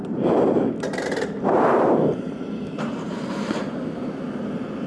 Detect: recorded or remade recorded